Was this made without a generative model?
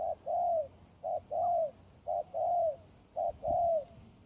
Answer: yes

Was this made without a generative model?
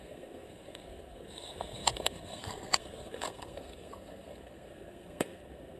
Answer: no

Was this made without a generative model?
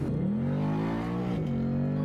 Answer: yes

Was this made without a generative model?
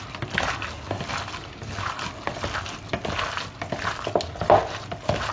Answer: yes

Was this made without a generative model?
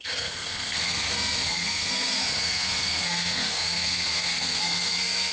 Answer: no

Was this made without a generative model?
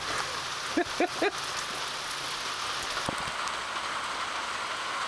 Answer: yes